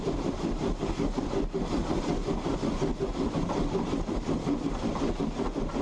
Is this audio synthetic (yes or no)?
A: no